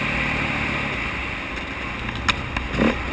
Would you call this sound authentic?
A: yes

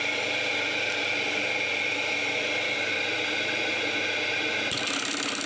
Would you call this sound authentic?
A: yes